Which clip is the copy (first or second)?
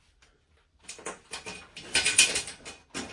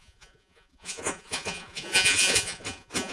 second